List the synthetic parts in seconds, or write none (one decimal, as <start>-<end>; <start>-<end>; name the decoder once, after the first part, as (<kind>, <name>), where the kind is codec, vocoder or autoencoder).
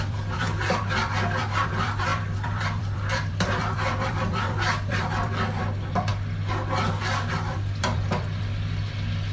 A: 0.0-6.1 (vocoder, BigVGAN v2); 7.3-9.3